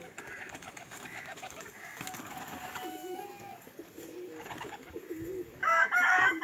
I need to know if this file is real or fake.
fake